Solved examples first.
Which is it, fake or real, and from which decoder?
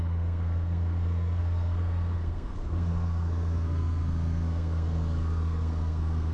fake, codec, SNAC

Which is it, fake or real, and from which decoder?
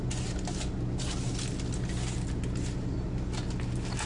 real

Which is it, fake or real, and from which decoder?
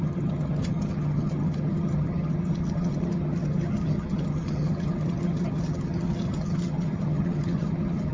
fake, vocoder, HiFi-GAN